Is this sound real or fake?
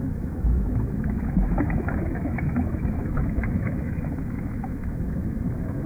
fake